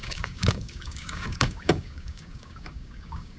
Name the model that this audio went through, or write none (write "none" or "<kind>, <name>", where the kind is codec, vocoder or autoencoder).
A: codec, DAC